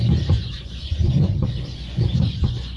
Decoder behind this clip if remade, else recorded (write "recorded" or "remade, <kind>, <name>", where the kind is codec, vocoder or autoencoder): remade, vocoder, Vocos